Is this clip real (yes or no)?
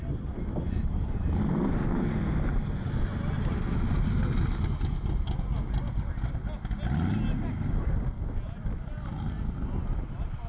yes